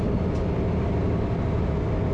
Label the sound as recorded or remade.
recorded